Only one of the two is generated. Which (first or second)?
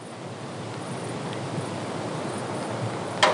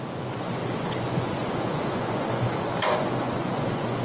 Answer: second